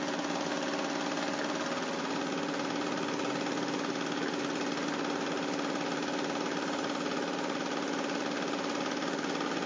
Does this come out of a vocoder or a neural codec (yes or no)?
no